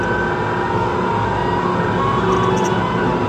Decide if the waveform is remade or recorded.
recorded